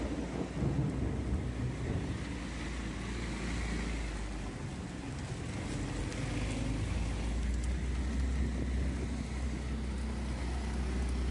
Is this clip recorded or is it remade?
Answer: recorded